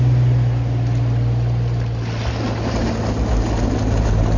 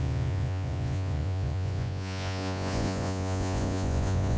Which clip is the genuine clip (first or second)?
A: first